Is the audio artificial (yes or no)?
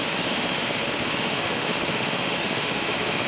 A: yes